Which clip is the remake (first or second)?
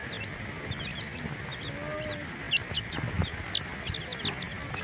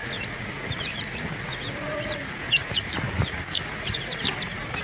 second